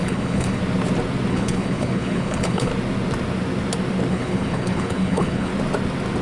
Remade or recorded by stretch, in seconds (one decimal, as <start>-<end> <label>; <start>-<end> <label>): 0.0-0.6 remade; 0.6-1.3 recorded; 1.3-2.7 remade; 2.7-4.1 recorded; 4.1-5.5 remade; 5.5-6.2 recorded